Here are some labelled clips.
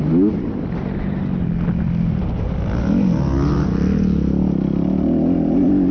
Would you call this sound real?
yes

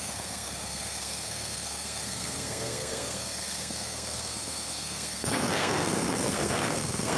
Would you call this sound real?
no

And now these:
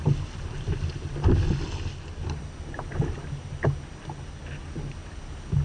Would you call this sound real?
yes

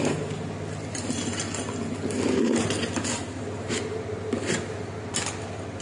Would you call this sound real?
yes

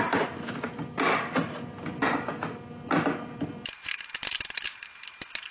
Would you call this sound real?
yes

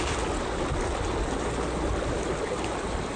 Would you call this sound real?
yes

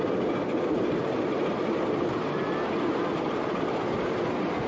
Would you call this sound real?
yes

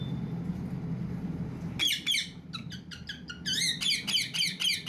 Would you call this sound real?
yes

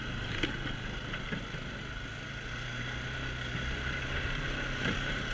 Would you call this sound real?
yes